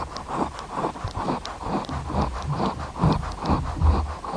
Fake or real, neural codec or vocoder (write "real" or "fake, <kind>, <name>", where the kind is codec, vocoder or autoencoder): real